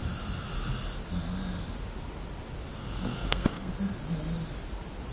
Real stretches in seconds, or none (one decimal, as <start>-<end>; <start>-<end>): 0.0-2.8; 3.7-5.1